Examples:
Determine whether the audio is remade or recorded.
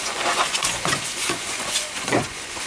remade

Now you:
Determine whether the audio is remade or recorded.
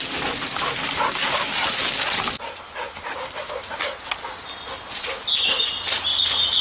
recorded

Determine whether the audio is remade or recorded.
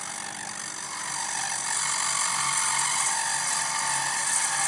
recorded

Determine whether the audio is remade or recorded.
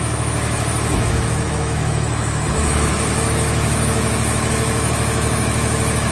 remade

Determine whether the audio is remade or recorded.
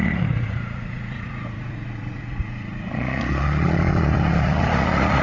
remade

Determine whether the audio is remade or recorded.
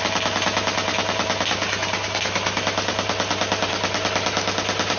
recorded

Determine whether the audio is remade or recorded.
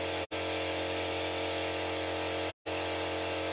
recorded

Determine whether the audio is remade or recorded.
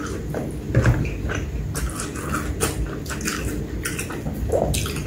recorded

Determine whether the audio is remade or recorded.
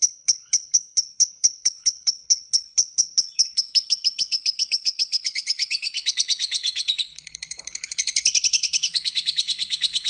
remade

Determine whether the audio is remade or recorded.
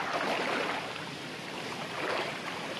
recorded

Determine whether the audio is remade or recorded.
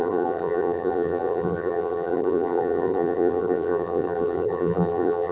remade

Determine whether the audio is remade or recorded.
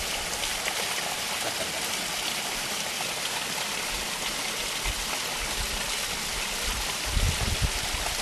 recorded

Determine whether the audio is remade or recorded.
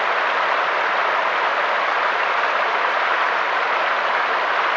recorded